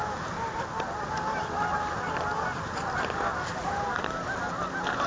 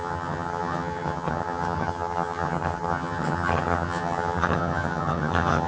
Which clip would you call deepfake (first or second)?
second